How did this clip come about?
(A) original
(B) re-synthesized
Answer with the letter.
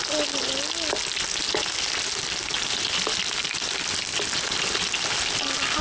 A